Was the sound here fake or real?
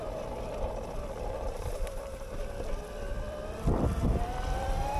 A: fake